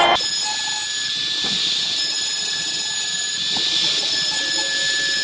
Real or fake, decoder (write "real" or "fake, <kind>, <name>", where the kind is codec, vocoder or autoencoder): real